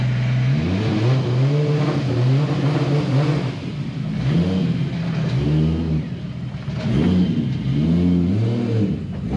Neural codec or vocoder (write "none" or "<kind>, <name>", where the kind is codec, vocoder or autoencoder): none